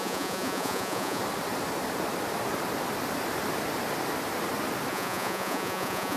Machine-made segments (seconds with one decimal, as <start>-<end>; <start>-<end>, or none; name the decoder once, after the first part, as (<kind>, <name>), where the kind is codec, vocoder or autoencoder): 0.0-1.2 (vocoder, Vocos); 4.9-6.2